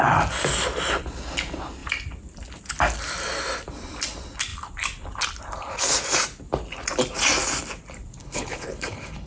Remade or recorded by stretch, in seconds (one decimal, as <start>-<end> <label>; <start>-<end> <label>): 0.0-8.2 recorded; 8.2-9.3 remade